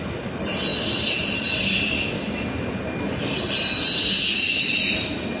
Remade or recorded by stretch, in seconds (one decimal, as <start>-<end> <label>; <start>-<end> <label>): 0.0-5.4 recorded